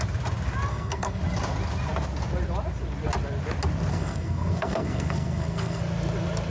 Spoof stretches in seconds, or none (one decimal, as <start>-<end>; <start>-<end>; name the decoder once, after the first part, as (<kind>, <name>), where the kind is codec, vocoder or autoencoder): 0.7-1.2 (codec, SNAC); 3.9-5.8